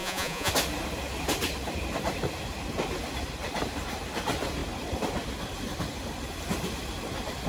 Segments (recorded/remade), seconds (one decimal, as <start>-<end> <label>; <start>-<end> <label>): 0.0-0.5 remade; 0.5-7.5 recorded